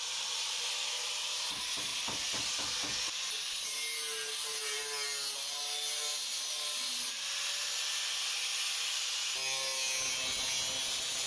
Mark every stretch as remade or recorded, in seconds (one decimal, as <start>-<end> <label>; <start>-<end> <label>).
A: 0.0-6.9 recorded; 6.9-7.7 remade; 7.7-11.3 recorded

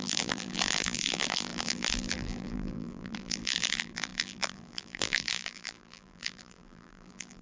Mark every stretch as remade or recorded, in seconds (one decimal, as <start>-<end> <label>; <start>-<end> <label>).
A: 0.0-7.4 remade

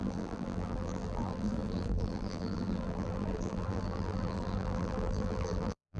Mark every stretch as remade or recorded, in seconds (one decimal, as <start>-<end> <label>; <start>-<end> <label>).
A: 0.0-6.0 remade

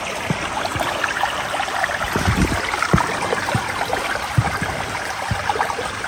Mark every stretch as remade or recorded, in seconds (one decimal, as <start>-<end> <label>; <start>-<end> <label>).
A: 0.0-0.7 remade; 0.7-1.9 recorded; 1.9-6.1 remade

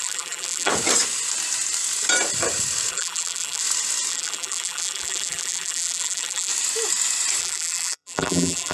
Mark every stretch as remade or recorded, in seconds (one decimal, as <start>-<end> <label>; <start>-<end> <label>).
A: 0.0-0.7 remade; 0.7-2.9 recorded; 2.9-3.6 remade; 3.6-4.1 recorded; 4.1-6.5 remade; 6.5-7.4 recorded; 7.4-8.7 remade

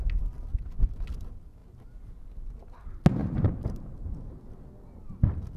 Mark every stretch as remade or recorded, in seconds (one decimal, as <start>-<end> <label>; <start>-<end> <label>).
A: 0.0-3.2 recorded; 3.2-4.2 remade; 4.2-5.6 recorded

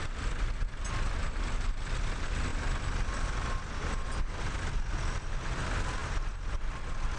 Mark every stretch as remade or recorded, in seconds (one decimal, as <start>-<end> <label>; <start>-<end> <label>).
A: 0.0-7.2 recorded